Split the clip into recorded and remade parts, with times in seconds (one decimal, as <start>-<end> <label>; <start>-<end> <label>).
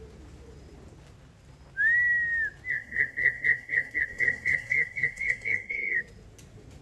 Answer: 0.0-2.7 recorded; 2.7-6.0 remade; 6.0-6.8 recorded